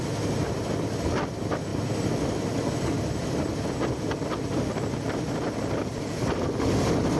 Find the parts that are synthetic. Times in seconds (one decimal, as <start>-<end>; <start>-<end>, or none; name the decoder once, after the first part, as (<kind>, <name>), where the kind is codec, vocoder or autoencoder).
none